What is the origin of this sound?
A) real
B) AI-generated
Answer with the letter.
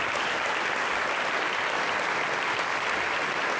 A